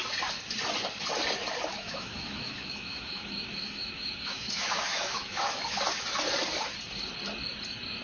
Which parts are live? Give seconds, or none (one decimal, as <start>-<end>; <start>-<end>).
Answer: 0.0-1.7; 5.8-8.0